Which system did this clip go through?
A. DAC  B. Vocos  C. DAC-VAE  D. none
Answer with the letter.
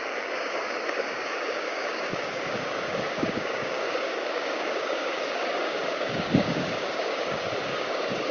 A